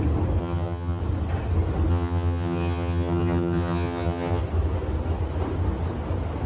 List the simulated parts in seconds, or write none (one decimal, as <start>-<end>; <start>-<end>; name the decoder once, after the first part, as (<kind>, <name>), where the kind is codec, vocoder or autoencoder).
0.4-1.0 (vocoder, HiFi-GAN); 1.9-4.4